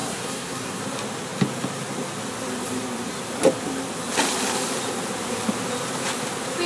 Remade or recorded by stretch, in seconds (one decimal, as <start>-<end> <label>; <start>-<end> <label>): 0.0-0.8 remade; 0.8-6.7 recorded